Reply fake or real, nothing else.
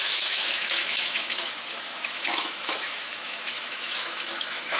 fake